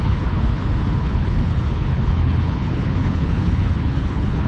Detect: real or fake fake